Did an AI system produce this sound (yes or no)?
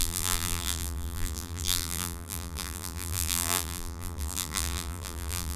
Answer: yes